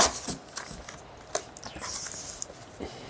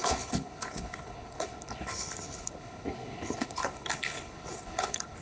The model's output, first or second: second